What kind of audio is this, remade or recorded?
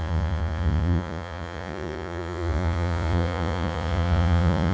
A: remade